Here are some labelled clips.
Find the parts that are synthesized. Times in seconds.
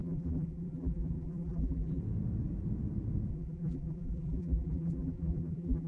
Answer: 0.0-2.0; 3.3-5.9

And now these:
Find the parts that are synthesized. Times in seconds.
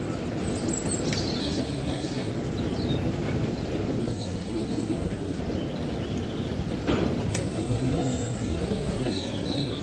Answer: 1.4-2.3; 4.0-5.4; 7.3-9.8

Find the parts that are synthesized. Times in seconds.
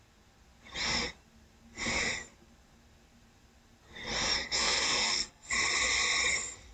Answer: 4.4-5.5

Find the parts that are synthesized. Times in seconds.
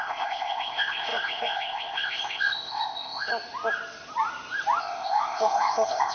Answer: 0.0-3.3; 4.8-6.1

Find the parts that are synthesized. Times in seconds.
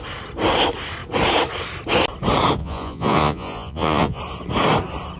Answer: 2.6-4.2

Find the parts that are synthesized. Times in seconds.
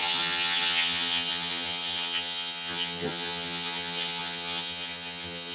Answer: 0.0-5.5